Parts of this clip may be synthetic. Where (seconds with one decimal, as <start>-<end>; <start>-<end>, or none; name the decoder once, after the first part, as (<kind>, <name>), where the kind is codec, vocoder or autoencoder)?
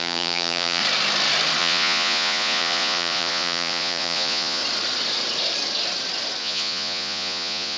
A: 0.0-0.8 (vocoder, Vocos); 1.6-4.6; 6.4-7.8